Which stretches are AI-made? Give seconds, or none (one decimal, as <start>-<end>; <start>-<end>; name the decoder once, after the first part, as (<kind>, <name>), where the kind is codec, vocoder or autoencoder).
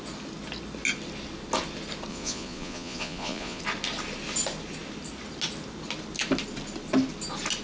2.1-3.6 (vocoder, Vocos)